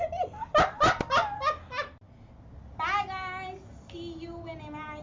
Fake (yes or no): no